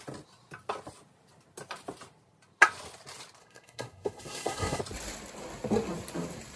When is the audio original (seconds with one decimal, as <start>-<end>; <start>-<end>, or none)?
0.0-3.4; 4.8-6.6